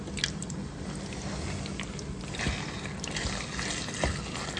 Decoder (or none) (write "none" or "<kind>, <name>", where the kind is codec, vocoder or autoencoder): none